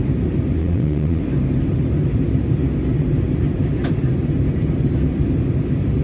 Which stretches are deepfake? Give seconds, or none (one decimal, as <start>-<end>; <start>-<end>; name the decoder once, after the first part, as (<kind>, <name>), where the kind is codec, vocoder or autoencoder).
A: 0.6-1.2 (vocoder, Vocos)

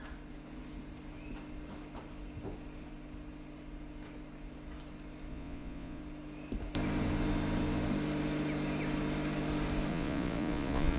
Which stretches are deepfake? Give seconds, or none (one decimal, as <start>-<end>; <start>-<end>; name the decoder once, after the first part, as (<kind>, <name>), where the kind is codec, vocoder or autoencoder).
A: 5.3-6.0 (vocoder, Vocos); 9.9-11.0